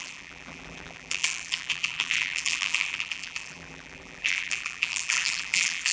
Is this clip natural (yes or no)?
no